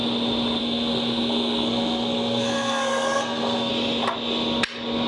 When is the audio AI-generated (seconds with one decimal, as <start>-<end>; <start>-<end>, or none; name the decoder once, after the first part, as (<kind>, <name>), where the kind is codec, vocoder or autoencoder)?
0.6-3.7 (codec, SNAC)